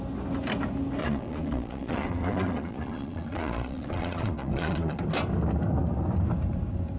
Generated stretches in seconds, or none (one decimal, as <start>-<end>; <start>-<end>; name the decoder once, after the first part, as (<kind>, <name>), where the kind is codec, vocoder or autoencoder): 1.0-5.0 (vocoder, Vocos)